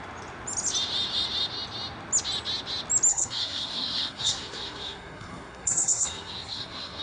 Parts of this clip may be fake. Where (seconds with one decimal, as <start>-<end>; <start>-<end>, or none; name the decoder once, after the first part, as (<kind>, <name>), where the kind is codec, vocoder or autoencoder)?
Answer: 3.1-7.0 (codec, SNAC)